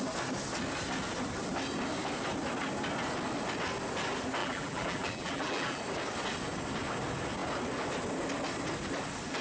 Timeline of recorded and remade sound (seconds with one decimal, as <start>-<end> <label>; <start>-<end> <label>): 0.0-4.4 recorded; 4.4-5.8 remade; 5.8-9.4 recorded